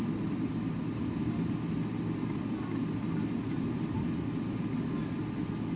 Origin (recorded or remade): recorded